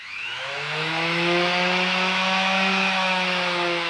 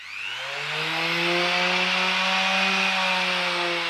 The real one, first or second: second